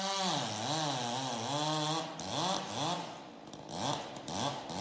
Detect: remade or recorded recorded